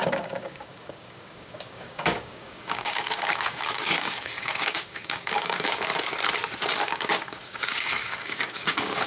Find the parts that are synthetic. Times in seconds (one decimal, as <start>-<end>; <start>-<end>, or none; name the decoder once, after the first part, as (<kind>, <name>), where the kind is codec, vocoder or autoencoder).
0.0-5.9 (codec, DAC); 6.8-9.1